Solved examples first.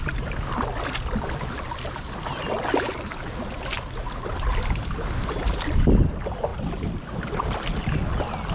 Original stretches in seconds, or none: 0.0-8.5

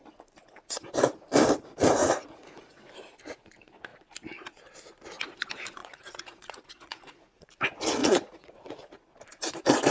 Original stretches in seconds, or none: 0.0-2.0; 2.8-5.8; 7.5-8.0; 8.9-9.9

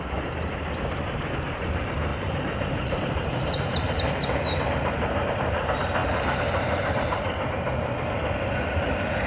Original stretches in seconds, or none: 0.0-2.1; 5.4-6.0; 7.2-9.3